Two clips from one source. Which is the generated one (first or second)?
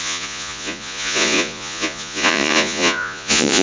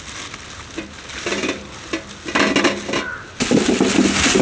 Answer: first